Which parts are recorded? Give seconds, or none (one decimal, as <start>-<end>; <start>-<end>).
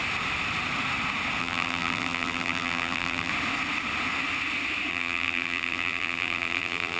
0.0-1.4; 3.3-4.9